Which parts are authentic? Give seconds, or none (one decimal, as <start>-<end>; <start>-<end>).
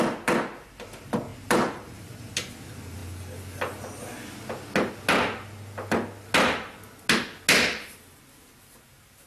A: 0.0-1.3; 2.3-9.3